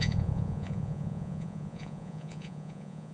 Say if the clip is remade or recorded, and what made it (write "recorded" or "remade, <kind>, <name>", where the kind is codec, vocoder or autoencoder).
remade, vocoder, Vocos